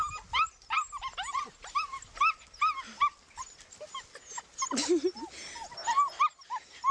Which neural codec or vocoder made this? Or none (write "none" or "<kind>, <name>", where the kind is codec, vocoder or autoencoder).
none